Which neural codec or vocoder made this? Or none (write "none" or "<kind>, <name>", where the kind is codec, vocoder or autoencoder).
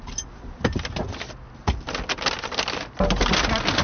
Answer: none